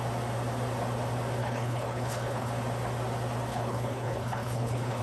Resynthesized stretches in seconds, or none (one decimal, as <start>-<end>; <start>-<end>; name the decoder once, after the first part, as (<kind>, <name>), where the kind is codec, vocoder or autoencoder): 1.4-2.5 (codec, HILCodec); 3.5-5.0